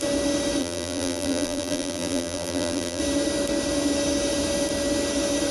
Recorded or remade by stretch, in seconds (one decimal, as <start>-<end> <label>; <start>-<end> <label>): 0.0-0.6 recorded; 0.6-3.0 remade; 3.0-5.5 recorded